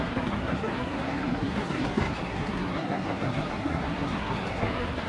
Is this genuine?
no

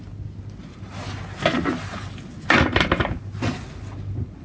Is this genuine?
yes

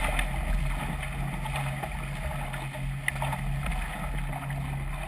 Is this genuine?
yes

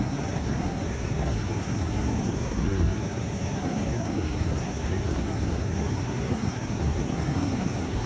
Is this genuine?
no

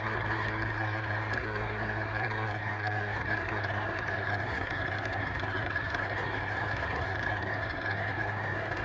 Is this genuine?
no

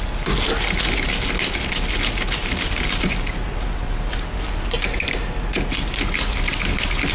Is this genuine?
yes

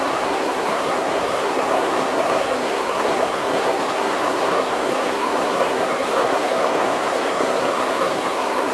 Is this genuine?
no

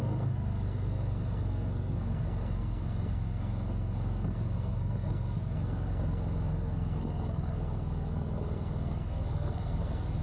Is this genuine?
no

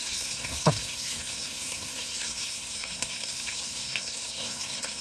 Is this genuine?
no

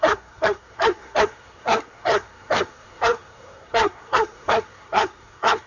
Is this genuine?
no